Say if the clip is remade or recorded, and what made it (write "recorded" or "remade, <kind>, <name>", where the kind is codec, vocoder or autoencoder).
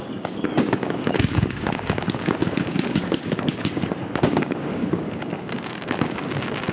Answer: remade, codec, DAC